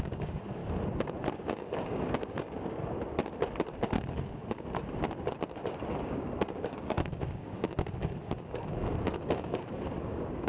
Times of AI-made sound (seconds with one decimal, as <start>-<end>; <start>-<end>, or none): 0.0-0.6; 1.3-2.8; 5.9-10.5

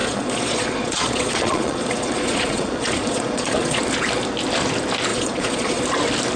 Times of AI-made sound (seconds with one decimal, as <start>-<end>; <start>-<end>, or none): 0.0-3.8; 5.1-5.8

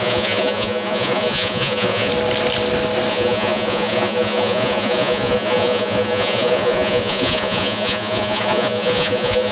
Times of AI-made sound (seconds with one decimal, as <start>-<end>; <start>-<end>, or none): 0.0-2.1; 3.1-9.5

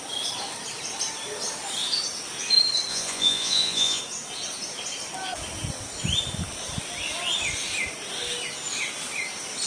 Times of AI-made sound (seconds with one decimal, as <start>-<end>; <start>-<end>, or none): 2.9-4.0

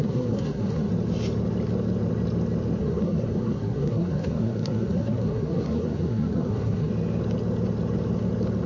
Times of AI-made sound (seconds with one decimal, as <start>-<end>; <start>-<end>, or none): 0.0-0.9; 2.8-6.9

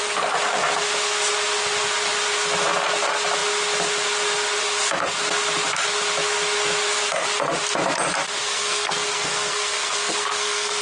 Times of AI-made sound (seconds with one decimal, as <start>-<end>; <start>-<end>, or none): 8.4-10.8